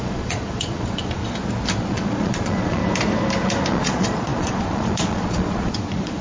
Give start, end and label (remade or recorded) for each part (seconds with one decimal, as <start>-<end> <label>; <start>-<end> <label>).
0.0-1.2 remade; 1.2-1.9 recorded; 1.9-2.8 remade; 2.8-3.7 recorded; 3.7-6.2 remade